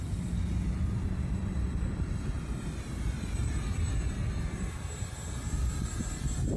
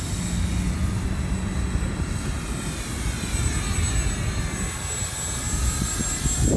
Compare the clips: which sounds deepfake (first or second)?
first